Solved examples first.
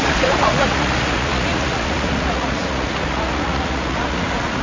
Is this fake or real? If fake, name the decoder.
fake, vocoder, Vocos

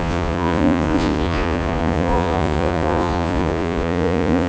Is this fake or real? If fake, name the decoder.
fake, vocoder, Vocos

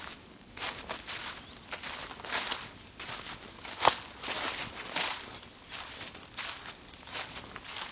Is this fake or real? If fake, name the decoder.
real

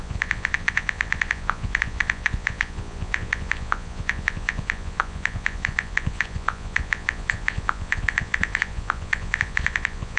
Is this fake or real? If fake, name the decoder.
fake, vocoder, Vocos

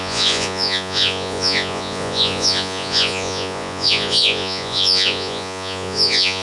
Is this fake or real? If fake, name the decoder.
fake, vocoder, Vocos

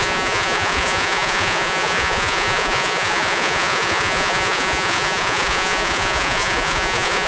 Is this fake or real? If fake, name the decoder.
fake, vocoder, Vocos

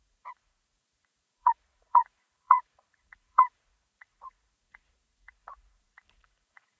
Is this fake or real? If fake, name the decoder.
fake, vocoder, Vocos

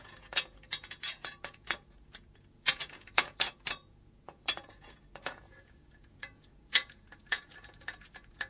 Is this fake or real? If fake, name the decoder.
fake, vocoder, Vocos